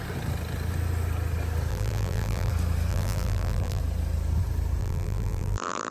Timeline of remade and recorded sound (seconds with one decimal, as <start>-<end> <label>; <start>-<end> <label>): 0.0-1.7 recorded; 1.7-2.5 remade; 2.5-2.9 recorded; 2.9-3.8 remade; 3.8-4.8 recorded; 4.8-5.9 remade